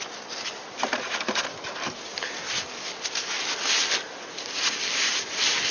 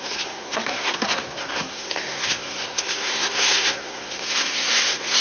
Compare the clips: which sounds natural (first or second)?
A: first